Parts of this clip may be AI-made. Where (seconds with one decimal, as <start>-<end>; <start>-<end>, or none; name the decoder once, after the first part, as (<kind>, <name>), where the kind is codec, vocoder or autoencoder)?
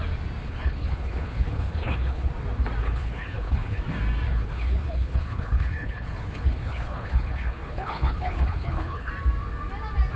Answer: 0.4-2.3 (codec, HILCodec); 2.8-3.8; 4.3-9.1